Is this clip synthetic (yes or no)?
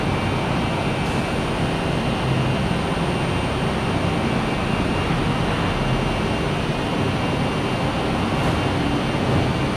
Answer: no